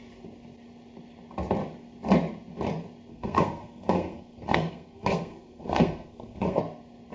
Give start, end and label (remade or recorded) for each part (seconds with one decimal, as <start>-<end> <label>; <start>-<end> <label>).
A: 0.0-3.1 recorded; 3.1-6.6 remade; 6.6-7.1 recorded